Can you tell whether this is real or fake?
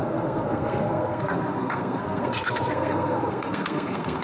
fake